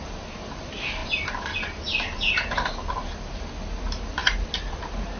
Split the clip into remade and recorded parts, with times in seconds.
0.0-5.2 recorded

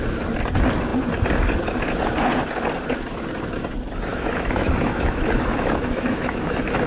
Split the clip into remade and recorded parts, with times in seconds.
0.0-4.1 recorded; 4.1-6.9 remade

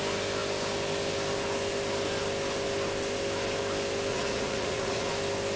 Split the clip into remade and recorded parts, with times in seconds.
0.0-4.1 recorded; 4.1-5.1 remade; 5.1-5.6 recorded

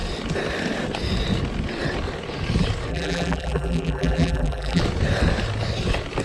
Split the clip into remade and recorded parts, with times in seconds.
0.0-2.9 recorded; 2.9-4.8 remade; 4.8-6.2 recorded

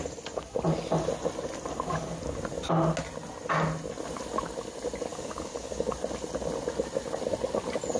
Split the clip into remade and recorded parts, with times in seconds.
0.0-5.1 recorded; 5.1-5.9 remade; 5.9-8.0 recorded

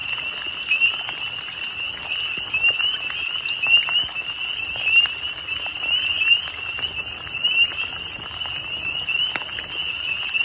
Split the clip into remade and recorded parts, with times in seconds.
0.0-10.4 recorded

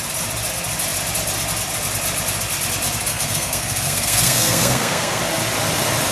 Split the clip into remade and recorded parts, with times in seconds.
0.0-3.1 recorded; 3.1-5.2 remade; 5.2-6.1 recorded

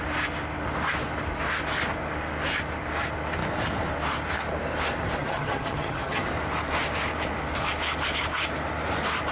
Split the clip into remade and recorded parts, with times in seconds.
0.0-5.2 recorded; 5.2-6.3 remade; 6.3-9.3 recorded